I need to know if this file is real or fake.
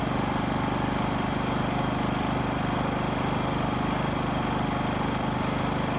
real